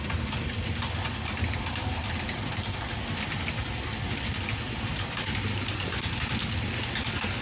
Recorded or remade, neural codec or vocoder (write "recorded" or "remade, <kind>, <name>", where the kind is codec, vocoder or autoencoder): recorded